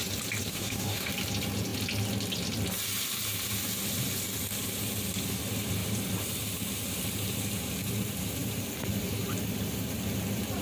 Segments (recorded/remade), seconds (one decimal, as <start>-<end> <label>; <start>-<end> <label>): 0.0-0.5 recorded; 0.5-1.1 remade; 1.1-10.6 recorded